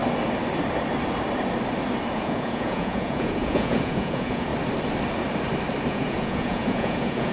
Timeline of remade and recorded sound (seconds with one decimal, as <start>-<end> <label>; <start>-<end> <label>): 0.0-2.1 recorded; 2.1-4.5 remade; 4.5-5.9 recorded; 5.9-7.3 remade